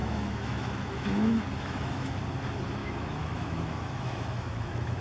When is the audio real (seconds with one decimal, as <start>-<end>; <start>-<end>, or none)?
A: 2.2-2.8